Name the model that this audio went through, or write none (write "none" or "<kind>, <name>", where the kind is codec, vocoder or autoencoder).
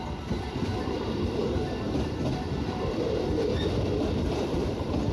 vocoder, BigVGAN v2